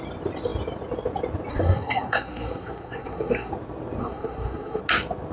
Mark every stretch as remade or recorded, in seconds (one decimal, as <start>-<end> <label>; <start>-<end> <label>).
0.0-1.5 recorded; 1.5-3.5 remade; 3.5-4.0 recorded; 4.0-4.8 remade; 4.8-5.3 recorded